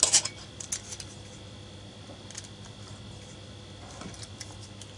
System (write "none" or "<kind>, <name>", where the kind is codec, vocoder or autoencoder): none